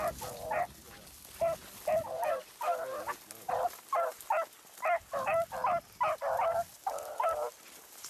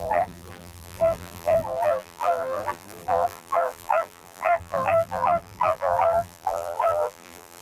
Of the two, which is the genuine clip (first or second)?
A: first